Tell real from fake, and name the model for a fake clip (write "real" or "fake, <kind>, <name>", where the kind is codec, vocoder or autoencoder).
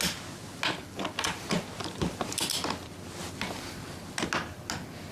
real